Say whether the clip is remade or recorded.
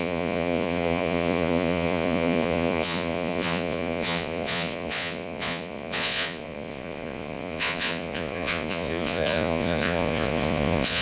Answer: remade